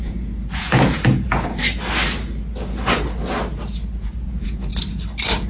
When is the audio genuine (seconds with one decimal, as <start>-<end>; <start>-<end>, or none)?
1.6-4.0; 4.7-5.5